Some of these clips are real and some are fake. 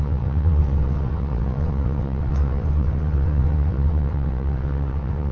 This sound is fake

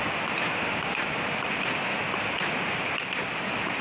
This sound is real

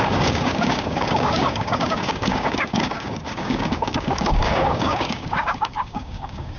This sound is fake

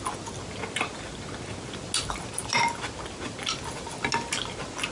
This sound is real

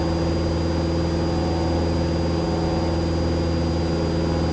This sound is real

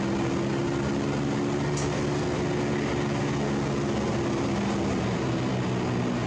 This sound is real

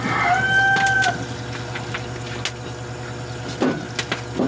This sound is real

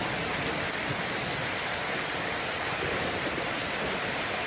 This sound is real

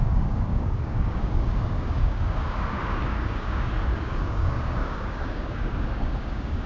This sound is fake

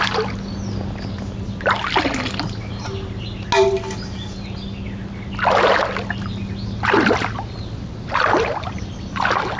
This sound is real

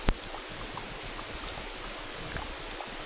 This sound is real